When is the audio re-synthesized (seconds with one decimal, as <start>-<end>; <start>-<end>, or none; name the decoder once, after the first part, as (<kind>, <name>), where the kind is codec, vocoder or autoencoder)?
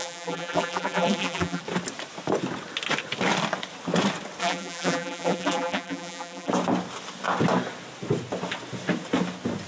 0.0-1.6 (vocoder, BigVGAN v2); 4.4-6.5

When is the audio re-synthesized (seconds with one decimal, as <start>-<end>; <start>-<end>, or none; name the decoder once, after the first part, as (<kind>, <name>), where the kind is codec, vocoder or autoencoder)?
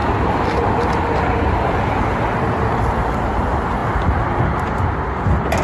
none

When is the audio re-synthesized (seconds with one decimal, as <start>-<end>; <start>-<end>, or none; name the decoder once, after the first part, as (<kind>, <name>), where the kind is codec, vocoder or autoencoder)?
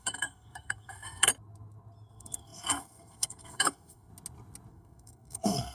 0.0-1.3 (codec, SNAC); 2.1-4.1; 4.7-5.7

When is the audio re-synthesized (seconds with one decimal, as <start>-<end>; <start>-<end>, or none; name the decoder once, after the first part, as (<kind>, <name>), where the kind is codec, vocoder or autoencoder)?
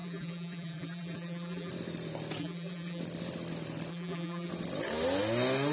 0.0-1.7 (vocoder, BigVGAN v2); 2.4-3.0; 3.9-4.5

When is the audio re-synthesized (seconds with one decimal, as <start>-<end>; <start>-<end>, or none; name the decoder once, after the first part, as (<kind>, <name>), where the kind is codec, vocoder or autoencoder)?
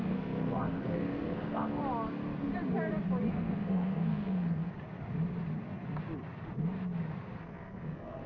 0.0-1.8 (codec, SNAC); 3.3-4.7; 7.4-8.3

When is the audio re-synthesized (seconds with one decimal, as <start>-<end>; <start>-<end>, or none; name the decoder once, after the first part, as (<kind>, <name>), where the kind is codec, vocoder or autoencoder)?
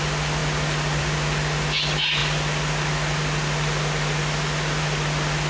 none